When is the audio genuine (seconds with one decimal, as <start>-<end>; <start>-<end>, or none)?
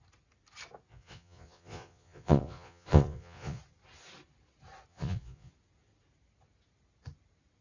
0.0-0.9; 3.6-4.9; 5.5-7.6